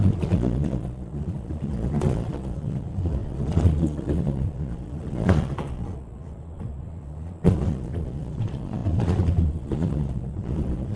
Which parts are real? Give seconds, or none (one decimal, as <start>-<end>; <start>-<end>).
none